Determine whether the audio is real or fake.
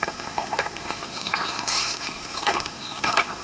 fake